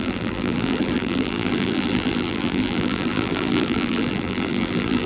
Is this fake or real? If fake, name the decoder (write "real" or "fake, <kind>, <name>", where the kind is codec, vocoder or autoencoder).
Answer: fake, vocoder, BigVGAN v2